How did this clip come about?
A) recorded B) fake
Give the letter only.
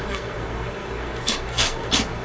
B